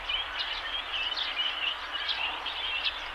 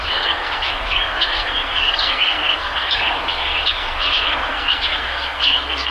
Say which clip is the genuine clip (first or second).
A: first